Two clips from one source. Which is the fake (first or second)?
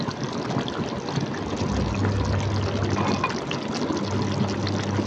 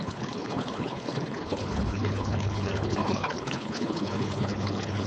second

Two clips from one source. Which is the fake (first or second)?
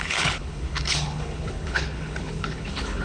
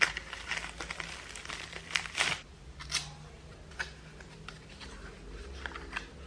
first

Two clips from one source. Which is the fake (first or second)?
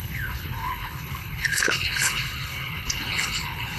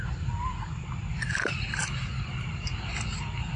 first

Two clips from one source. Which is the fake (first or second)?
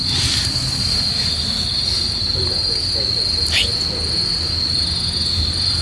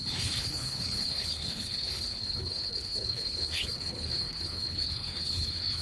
second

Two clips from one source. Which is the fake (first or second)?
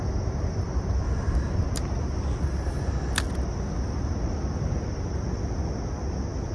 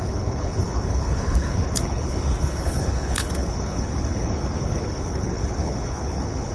second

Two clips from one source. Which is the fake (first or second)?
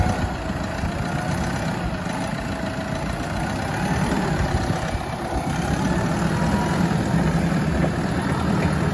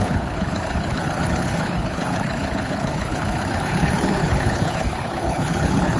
second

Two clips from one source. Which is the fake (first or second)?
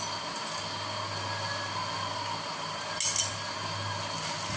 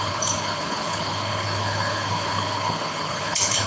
second